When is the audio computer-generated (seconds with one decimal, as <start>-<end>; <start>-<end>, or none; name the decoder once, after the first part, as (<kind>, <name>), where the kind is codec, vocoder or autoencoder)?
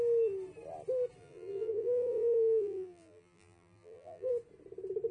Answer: 1.2-4.3 (vocoder, BigVGAN v2)